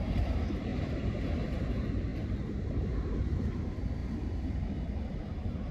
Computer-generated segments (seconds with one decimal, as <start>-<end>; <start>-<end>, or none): 0.0-5.7